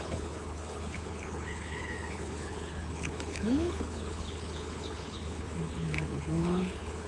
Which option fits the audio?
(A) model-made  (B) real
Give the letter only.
A